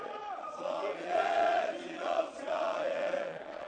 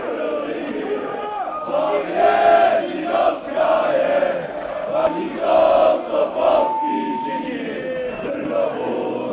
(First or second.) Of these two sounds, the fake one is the first